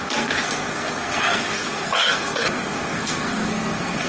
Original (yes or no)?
no